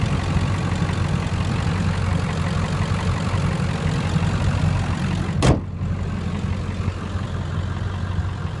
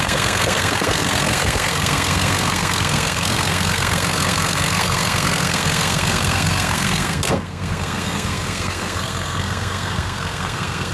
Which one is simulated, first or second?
second